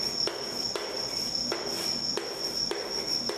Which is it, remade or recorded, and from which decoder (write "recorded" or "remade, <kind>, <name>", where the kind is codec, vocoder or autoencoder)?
recorded